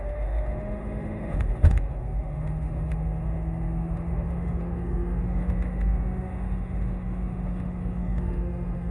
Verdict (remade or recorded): remade